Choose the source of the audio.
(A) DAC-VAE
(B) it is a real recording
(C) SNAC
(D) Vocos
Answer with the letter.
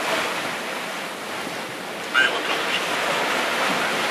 B